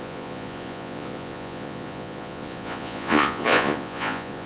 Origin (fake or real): fake